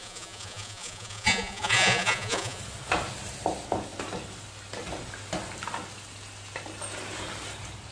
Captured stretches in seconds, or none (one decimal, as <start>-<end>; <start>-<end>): 2.6-7.9